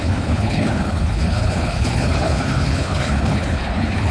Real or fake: fake